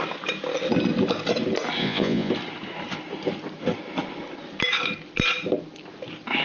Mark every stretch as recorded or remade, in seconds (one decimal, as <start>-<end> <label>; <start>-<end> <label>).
0.0-1.8 recorded; 1.8-2.3 remade; 2.3-6.4 recorded

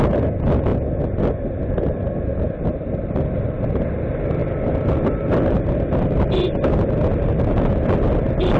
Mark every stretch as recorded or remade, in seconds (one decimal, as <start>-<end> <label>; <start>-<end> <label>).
0.0-8.6 recorded

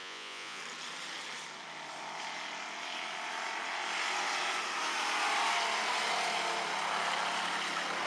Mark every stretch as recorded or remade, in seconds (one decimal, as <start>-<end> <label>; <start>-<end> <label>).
0.0-0.6 remade; 0.6-8.1 recorded

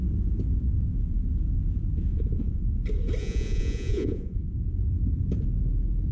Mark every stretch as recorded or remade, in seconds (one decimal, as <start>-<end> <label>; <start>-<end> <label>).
0.0-2.1 recorded; 2.1-2.6 remade; 2.6-3.2 recorded; 3.2-4.4 remade; 4.4-6.1 recorded